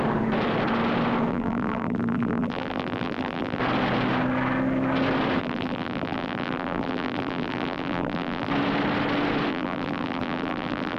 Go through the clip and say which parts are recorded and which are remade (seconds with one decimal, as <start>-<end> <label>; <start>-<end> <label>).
0.0-1.3 recorded; 1.3-3.6 remade; 3.6-5.4 recorded; 5.4-8.5 remade; 8.5-9.5 recorded; 9.5-11.0 remade